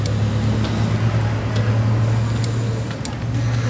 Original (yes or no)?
yes